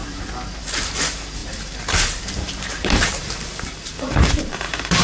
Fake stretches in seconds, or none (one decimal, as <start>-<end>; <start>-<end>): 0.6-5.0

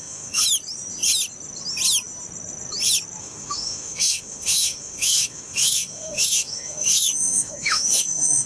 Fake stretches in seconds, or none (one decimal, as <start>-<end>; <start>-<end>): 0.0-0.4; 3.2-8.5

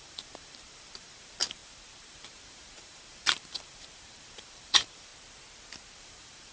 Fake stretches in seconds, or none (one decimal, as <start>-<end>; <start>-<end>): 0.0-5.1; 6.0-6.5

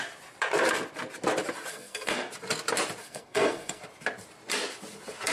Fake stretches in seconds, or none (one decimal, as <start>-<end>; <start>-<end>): 1.7-2.3; 3.0-3.8